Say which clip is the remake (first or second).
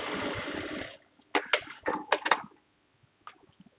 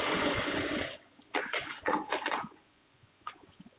second